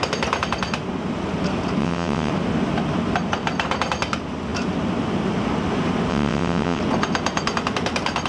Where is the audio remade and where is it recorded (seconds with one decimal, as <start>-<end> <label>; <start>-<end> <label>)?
0.0-1.8 recorded; 1.8-2.3 remade; 2.3-6.1 recorded; 6.1-6.8 remade; 6.8-8.3 recorded